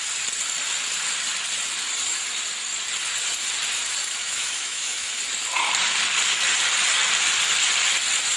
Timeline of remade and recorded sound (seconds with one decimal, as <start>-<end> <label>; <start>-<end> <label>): 0.0-4.2 recorded; 4.2-5.2 remade; 5.2-8.4 recorded

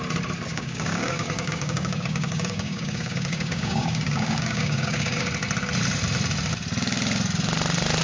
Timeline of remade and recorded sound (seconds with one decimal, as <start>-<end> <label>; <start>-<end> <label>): 0.0-0.5 recorded; 0.5-5.3 remade; 5.3-8.0 recorded

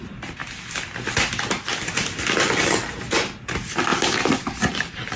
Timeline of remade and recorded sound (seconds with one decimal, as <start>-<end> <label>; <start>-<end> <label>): 0.0-5.2 recorded

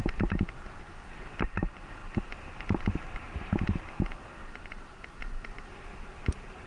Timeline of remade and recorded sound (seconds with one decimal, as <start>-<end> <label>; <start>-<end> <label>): 0.0-2.0 recorded; 2.0-5.2 remade; 5.2-5.9 recorded; 5.9-6.7 remade

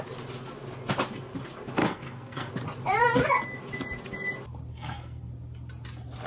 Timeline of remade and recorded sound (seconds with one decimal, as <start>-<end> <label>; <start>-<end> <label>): 0.0-1.8 recorded; 1.8-2.5 remade; 2.5-4.7 recorded; 4.7-5.3 remade; 5.3-6.3 recorded

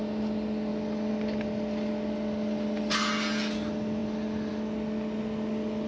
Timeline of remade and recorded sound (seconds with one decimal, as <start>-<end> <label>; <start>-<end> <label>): 0.0-5.9 recorded

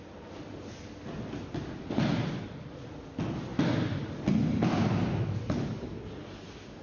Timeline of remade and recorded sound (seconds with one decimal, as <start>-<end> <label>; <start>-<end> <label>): 0.0-6.8 recorded